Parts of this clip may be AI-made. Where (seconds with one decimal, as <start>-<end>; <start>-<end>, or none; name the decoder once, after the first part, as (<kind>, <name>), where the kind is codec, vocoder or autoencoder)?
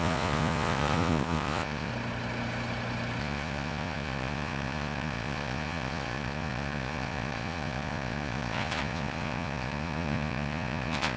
0.0-1.9 (vocoder, Vocos); 3.2-11.2